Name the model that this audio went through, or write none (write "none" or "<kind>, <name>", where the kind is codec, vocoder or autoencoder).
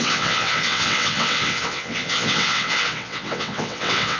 vocoder, WaveNeXt